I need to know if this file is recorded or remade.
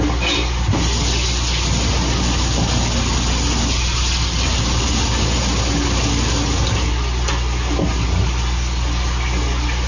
recorded